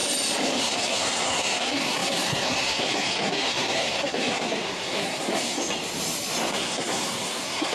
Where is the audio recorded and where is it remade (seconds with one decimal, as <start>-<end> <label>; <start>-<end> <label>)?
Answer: 0.0-0.6 recorded; 0.6-5.6 remade; 5.6-6.5 recorded; 6.5-7.7 remade